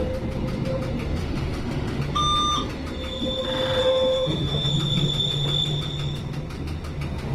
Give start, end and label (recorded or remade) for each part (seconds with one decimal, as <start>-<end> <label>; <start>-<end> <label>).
0.0-1.2 recorded; 1.2-2.0 remade; 2.0-3.8 recorded; 3.8-4.7 remade; 4.7-7.3 recorded